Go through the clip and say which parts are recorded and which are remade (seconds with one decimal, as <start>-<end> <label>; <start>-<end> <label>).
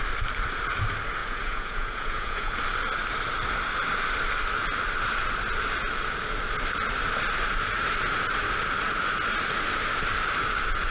0.0-1.2 recorded; 1.2-2.5 remade; 2.5-10.9 recorded